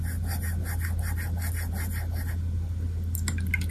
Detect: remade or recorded recorded